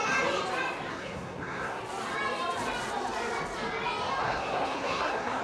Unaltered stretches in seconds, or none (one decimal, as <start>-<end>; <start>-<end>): 0.0-0.9; 1.8-4.2